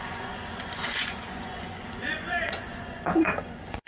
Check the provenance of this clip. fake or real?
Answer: fake